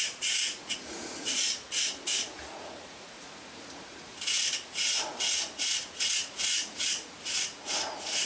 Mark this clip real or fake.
fake